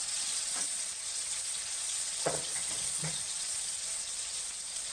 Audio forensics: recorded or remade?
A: remade